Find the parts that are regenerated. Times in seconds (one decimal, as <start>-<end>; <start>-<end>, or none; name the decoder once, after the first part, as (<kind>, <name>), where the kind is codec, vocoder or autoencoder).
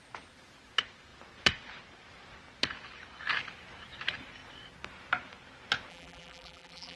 5.9-7.0 (vocoder, BigVGAN v2)